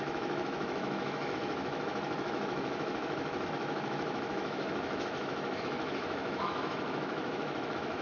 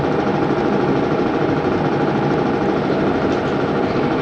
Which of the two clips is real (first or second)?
second